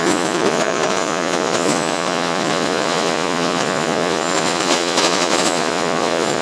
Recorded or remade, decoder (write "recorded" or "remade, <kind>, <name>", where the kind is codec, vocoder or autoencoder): remade, vocoder, Vocos